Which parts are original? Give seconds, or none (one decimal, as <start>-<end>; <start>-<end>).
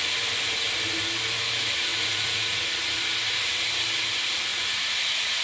0.0-1.9; 3.0-4.5